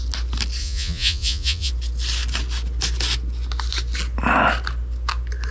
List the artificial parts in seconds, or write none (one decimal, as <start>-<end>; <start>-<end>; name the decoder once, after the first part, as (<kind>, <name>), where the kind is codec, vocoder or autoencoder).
0.6-1.7 (vocoder, Vocos)